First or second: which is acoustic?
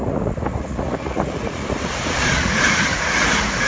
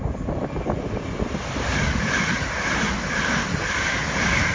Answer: second